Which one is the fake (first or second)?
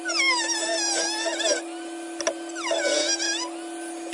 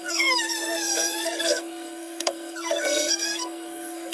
second